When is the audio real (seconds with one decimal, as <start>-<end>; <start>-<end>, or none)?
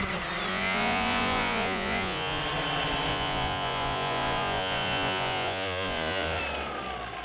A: 0.0-0.5; 2.4-3.1; 6.4-7.2